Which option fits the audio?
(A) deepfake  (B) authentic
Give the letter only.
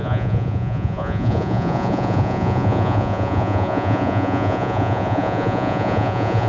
A